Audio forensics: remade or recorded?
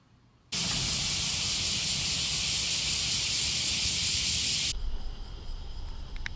recorded